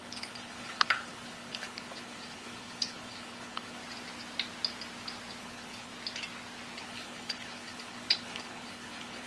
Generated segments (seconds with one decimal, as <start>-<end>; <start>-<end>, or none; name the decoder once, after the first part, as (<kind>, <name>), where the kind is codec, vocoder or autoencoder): 0.0-3.8 (codec, HILCodec); 5.4-5.9; 6.8-9.3